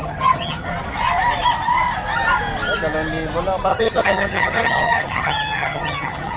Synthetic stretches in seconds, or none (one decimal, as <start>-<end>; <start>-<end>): 0.0-0.7; 3.7-6.4